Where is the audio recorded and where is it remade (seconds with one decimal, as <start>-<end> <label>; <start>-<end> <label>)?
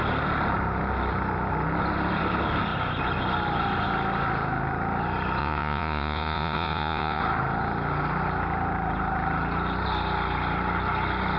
0.0-5.4 recorded; 5.4-7.2 remade; 7.2-11.4 recorded